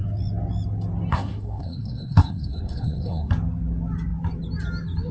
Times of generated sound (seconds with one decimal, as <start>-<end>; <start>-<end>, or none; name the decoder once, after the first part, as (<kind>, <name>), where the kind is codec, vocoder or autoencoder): 1.1-3.3 (codec, SNAC)